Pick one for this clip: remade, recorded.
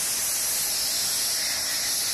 recorded